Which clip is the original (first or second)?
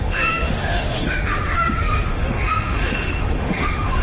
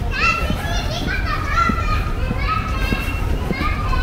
second